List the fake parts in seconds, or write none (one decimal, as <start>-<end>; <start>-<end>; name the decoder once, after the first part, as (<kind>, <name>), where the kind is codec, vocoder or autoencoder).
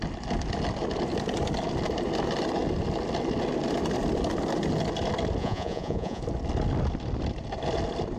5.4-6.2 (vocoder, Vocos)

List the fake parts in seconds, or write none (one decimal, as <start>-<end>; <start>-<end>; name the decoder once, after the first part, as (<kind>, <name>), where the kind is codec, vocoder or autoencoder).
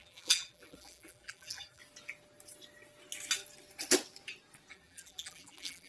0.0-1.8 (vocoder, BigVGAN v2); 4.7-5.9